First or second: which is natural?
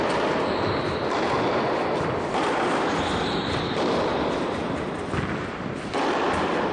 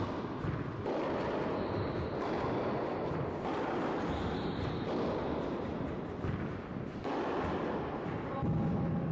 second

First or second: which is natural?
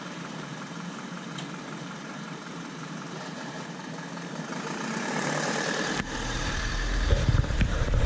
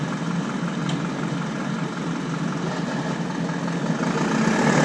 second